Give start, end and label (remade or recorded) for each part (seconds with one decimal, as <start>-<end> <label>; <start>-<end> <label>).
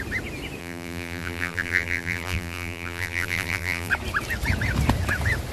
0.0-0.6 recorded; 0.6-3.9 remade; 3.9-5.5 recorded